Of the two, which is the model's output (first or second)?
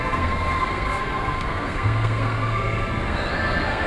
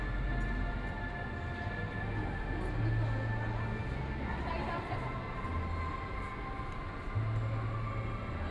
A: first